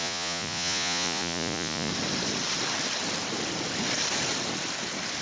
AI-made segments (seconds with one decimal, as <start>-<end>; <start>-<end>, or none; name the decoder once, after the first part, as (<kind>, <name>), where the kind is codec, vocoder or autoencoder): 0.0-1.9 (vocoder, Vocos)